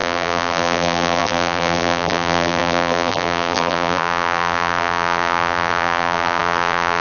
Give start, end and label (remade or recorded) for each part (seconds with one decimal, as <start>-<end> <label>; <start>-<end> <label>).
0.0-7.0 remade

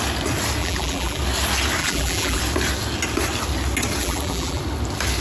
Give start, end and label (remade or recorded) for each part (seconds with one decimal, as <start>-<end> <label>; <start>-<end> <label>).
0.0-0.6 recorded; 0.6-1.2 remade; 1.2-1.8 recorded; 1.8-2.4 remade; 2.4-4.0 recorded; 4.0-4.6 remade; 4.6-5.2 recorded

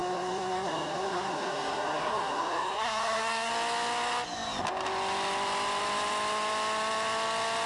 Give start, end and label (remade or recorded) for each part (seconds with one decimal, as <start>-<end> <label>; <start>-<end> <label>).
0.0-3.5 remade; 3.5-7.7 recorded

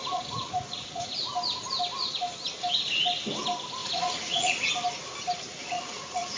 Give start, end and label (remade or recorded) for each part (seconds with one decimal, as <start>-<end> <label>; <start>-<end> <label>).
0.0-1.1 remade; 1.1-3.8 recorded; 3.8-4.7 remade; 4.7-5.6 recorded; 5.6-6.4 remade

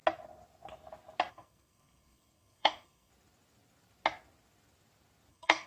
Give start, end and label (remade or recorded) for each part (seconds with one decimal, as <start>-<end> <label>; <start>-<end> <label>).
0.0-1.3 recorded; 1.3-3.1 remade; 3.1-5.3 recorded; 5.3-5.7 remade

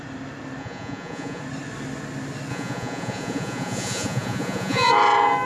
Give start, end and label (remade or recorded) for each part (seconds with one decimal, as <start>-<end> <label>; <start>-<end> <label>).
0.0-0.6 recorded; 0.6-1.4 remade; 1.4-2.5 recorded; 2.5-4.9 remade; 4.9-5.5 recorded

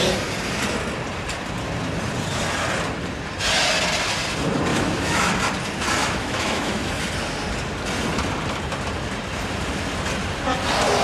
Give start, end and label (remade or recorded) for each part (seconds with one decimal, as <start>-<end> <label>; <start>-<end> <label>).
0.0-4.7 recorded; 4.7-5.3 remade; 5.3-6.0 recorded; 6.0-6.9 remade; 6.9-11.0 recorded

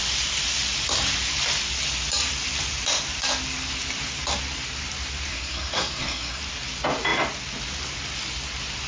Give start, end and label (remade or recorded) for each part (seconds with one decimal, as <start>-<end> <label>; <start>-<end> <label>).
0.0-5.3 recorded; 5.3-6.4 remade; 6.4-8.9 recorded